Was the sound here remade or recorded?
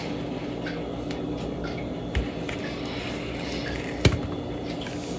recorded